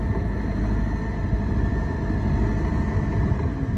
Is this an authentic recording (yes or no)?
yes